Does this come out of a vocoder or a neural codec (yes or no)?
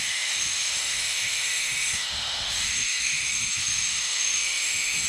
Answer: yes